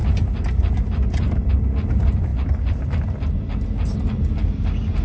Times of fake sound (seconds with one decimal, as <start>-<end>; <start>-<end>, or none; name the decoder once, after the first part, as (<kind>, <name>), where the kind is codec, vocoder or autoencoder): none